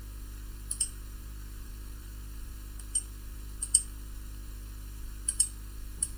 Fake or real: fake